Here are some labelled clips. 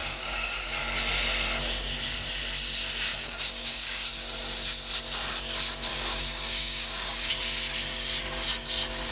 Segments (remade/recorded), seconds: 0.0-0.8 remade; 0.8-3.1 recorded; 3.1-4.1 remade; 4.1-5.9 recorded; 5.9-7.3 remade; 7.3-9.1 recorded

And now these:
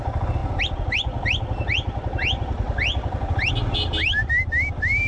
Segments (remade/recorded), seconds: 0.0-5.1 recorded

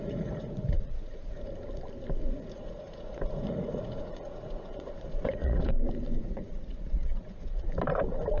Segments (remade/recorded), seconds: 0.0-1.5 remade; 1.5-2.2 recorded; 2.2-5.7 remade; 5.7-6.2 recorded; 6.2-7.7 remade; 7.7-8.4 recorded

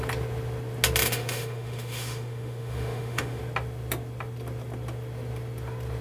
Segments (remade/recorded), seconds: 0.0-1.0 recorded; 1.0-3.4 remade; 3.4-6.0 recorded